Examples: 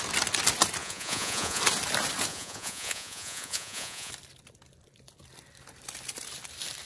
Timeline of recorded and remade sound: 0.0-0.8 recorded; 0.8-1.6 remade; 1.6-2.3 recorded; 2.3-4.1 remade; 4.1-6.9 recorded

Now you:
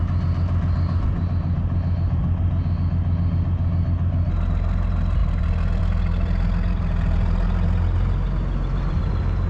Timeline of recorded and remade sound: 0.0-9.5 recorded

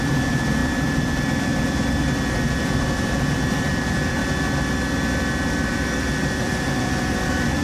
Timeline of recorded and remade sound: 0.0-4.2 remade; 4.2-5.7 recorded; 5.7-7.6 remade

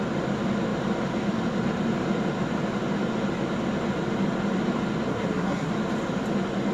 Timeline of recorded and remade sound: 0.0-5.1 recorded; 5.1-5.7 remade; 5.7-6.7 recorded

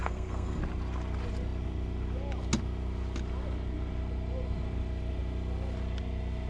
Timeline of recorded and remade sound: 0.0-0.6 remade; 0.6-6.5 recorded